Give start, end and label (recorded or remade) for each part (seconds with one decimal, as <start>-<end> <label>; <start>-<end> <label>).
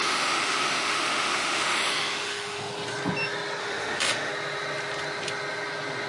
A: 0.0-2.7 remade; 2.7-3.6 recorded; 3.6-4.3 remade; 4.3-6.1 recorded